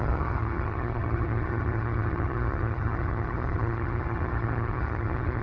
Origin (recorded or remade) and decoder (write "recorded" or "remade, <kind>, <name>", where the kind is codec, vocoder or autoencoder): remade, vocoder, HiFi-GAN